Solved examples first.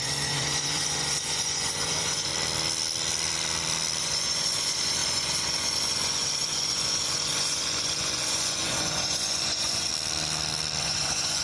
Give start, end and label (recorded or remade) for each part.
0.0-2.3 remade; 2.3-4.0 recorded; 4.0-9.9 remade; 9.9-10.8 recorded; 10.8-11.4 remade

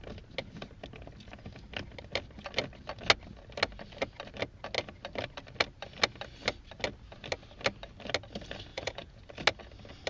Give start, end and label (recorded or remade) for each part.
0.0-8.7 recorded; 8.7-9.2 remade; 9.2-10.1 recorded

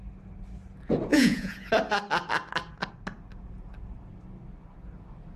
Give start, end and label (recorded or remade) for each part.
0.0-1.1 recorded; 1.1-1.7 remade; 1.7-5.4 recorded

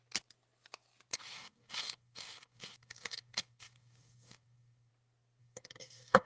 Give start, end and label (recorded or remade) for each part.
0.0-1.1 recorded; 1.1-4.9 remade; 4.9-5.4 recorded; 5.4-6.3 remade

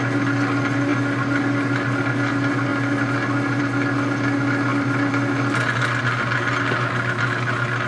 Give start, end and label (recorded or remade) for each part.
0.0-7.9 recorded

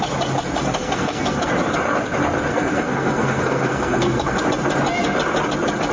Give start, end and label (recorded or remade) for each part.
0.0-0.6 recorded; 0.6-1.5 remade; 1.5-2.5 recorded; 2.5-4.4 remade; 4.4-5.9 recorded

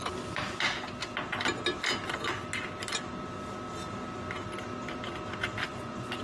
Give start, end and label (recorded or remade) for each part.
0.0-5.6 recorded; 5.6-6.2 remade

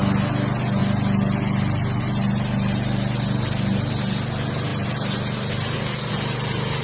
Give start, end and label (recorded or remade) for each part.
0.0-6.8 recorded